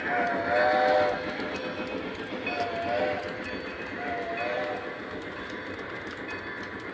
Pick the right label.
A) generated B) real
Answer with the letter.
B